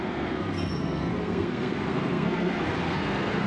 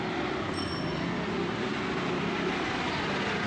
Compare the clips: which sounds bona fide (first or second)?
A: second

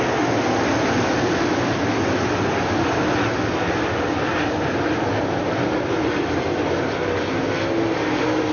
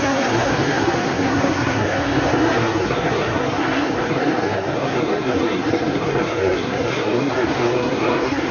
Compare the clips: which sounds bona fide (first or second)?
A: first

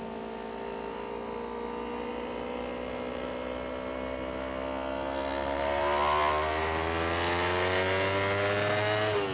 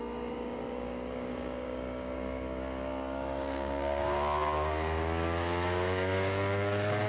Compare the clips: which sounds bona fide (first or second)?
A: first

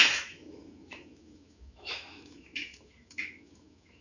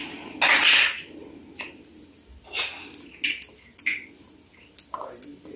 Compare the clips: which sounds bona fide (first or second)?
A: second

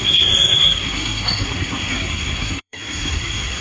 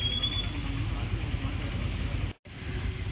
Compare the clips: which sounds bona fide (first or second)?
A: second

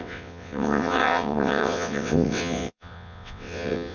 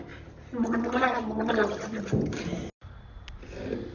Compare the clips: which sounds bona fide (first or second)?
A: second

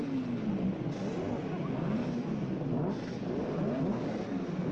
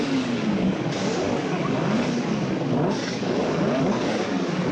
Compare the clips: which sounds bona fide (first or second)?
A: first